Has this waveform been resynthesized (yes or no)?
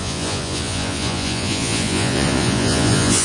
yes